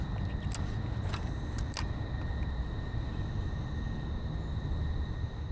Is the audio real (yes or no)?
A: yes